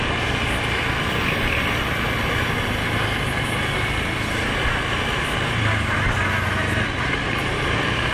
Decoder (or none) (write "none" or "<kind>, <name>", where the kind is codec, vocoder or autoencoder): none